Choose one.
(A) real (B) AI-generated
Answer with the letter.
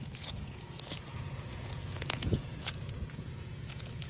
B